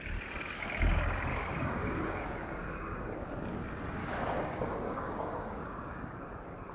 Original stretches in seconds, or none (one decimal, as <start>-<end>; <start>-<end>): 0.0-1.3; 3.6-4.0; 6.3-6.7